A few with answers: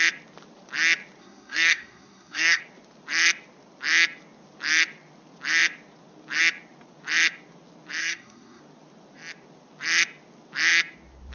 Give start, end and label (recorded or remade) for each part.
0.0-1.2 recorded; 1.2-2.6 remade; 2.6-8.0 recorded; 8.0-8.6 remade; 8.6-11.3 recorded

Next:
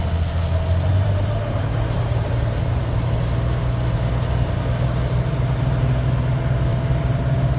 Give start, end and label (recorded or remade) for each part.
0.0-0.9 recorded; 0.9-2.8 remade; 2.8-6.7 recorded; 6.7-7.6 remade

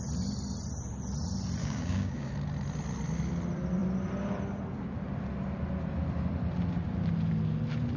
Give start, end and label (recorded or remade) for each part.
0.0-1.6 recorded; 1.6-2.3 remade; 2.3-8.0 recorded

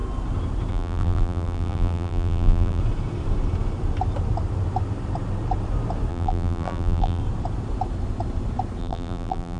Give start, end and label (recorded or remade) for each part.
0.0-0.7 recorded; 0.7-2.8 remade; 2.8-6.1 recorded; 6.1-7.2 remade; 7.2-8.8 recorded; 8.8-9.6 remade

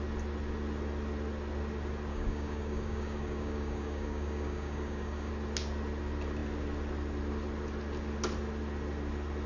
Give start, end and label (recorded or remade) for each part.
0.0-2.1 recorded; 2.1-5.3 remade; 5.3-9.5 recorded

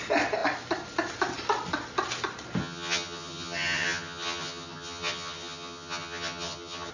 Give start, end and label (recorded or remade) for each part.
0.0-2.6 recorded; 2.6-6.9 remade